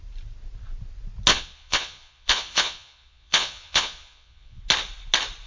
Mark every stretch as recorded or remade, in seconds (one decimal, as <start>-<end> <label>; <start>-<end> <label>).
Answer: 0.0-1.3 recorded; 1.3-4.6 remade; 4.6-5.5 recorded